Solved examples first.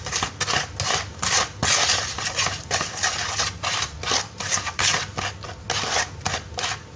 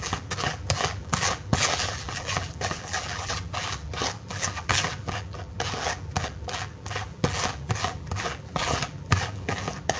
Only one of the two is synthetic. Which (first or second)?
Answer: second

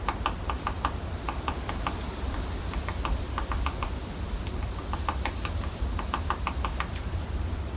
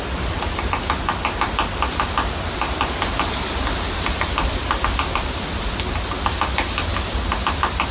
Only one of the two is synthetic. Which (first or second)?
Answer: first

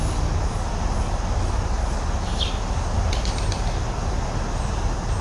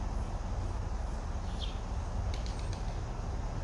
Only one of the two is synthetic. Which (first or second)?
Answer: first